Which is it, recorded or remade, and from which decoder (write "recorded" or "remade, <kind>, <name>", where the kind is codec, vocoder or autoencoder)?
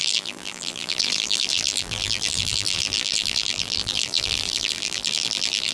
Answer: remade, vocoder, BigVGAN v2